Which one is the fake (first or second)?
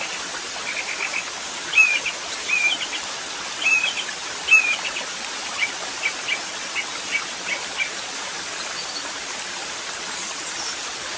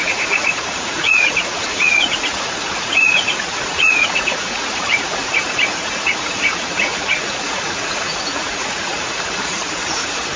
second